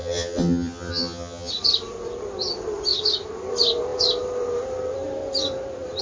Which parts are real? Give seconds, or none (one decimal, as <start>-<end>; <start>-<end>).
1.5-6.0